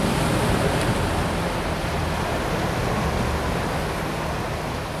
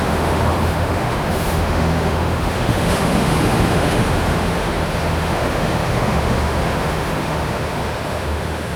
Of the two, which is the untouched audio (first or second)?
first